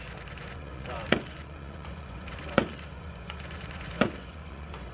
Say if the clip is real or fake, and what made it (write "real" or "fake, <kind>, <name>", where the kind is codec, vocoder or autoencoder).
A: fake, vocoder, Vocos